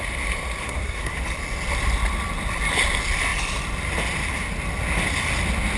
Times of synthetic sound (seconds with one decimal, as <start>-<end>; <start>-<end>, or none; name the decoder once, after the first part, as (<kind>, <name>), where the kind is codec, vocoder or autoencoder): 0.6-1.2 (codec, SNAC)